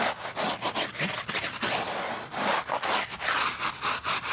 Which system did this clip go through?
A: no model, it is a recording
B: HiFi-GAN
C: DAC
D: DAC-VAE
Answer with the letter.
A